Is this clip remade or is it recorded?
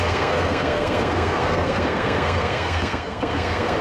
remade